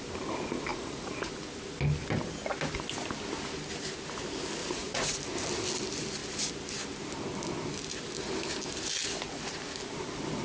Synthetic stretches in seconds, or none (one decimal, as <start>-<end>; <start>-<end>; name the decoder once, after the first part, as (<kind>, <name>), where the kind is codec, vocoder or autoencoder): 0.7-1.3 (vocoder, Vocos); 4.6-5.2